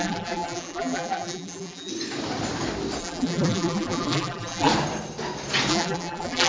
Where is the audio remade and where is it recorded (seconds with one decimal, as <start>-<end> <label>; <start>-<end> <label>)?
0.0-1.9 remade; 1.9-3.0 recorded; 3.0-4.7 remade; 4.7-5.7 recorded; 5.7-6.5 remade